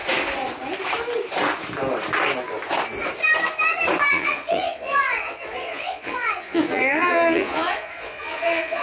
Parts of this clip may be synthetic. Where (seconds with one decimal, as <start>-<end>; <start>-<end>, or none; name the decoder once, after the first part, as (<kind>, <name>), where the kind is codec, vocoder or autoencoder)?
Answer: 4.1-8.8 (vocoder, Vocos)